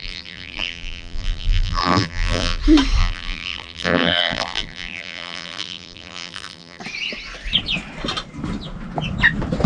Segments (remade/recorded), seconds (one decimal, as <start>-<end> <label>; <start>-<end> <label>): 0.0-2.6 remade; 2.6-3.0 recorded; 3.0-6.8 remade; 6.8-9.7 recorded